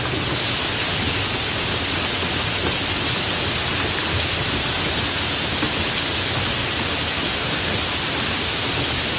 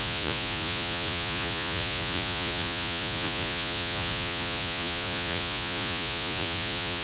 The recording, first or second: first